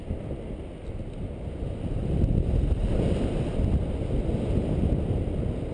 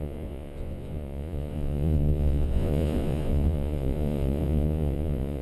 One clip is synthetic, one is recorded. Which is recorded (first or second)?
first